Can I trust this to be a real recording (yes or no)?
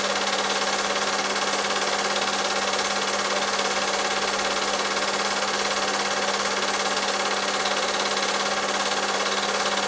yes